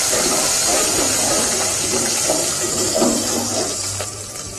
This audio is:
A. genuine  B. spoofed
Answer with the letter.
B